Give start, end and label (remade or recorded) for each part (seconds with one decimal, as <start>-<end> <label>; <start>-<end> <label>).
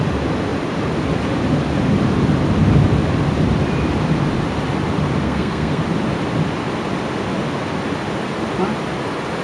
0.0-5.2 recorded; 5.2-5.8 remade; 5.8-9.4 recorded